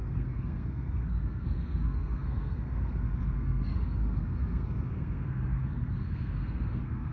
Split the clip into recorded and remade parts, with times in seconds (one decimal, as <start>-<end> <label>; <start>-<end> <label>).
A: 0.0-7.1 remade